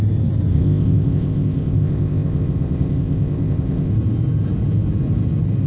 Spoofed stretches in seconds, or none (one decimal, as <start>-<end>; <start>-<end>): 0.5-3.9